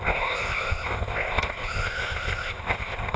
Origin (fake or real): fake